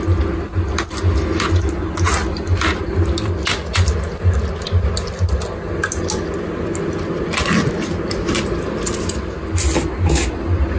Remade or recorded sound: recorded